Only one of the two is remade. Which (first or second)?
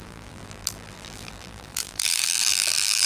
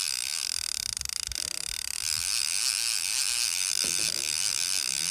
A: first